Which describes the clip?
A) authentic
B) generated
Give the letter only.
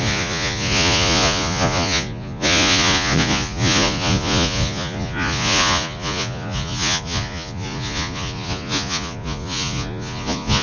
B